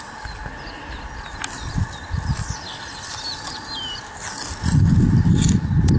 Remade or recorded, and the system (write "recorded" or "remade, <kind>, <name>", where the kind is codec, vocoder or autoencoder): recorded